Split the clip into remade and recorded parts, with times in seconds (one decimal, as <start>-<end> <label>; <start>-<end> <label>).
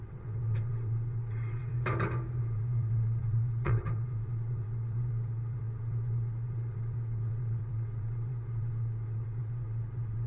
0.0-1.7 remade; 1.7-2.4 recorded; 2.4-10.3 remade